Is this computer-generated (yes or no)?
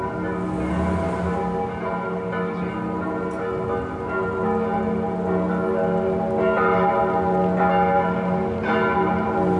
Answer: no